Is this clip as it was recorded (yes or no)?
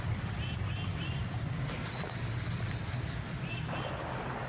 yes